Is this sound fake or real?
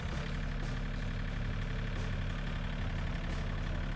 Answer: real